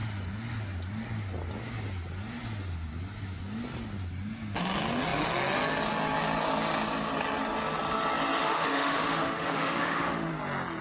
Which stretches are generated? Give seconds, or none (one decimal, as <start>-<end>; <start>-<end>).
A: 8.4-10.3